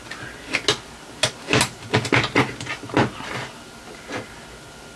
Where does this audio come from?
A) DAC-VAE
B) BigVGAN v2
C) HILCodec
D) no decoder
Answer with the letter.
D